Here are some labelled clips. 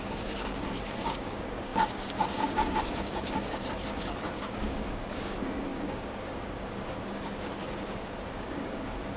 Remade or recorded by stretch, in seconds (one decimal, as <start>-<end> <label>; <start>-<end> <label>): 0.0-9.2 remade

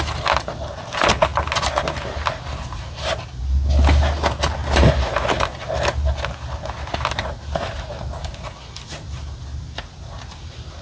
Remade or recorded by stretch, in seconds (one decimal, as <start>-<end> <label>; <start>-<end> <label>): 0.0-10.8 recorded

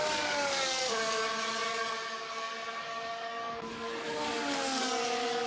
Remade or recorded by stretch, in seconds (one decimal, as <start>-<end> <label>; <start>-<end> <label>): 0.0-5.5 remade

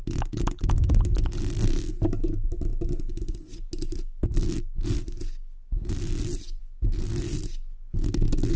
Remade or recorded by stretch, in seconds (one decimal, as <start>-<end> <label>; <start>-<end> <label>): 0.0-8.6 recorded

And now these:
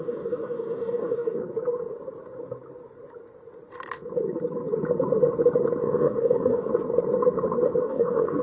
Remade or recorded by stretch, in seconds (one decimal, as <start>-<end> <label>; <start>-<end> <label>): 0.0-1.4 remade; 1.4-5.8 recorded; 5.8-6.7 remade; 6.7-7.8 recorded; 7.8-8.4 remade

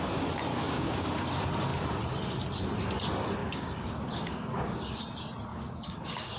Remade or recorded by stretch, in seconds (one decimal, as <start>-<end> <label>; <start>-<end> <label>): 0.0-0.5 recorded; 0.5-1.1 remade; 1.1-3.4 recorded; 3.4-5.0 remade; 5.0-5.5 recorded; 5.5-6.4 remade